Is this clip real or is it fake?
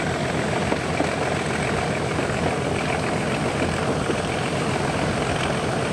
real